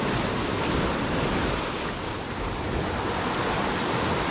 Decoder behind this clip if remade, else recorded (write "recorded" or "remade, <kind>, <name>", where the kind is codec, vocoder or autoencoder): recorded